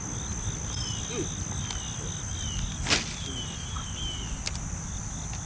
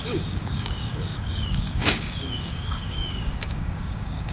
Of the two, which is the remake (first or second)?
second